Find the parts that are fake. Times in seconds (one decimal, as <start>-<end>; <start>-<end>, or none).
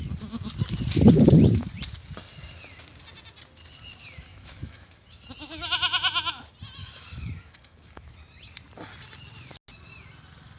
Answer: 4.3-5.3; 6.8-8.1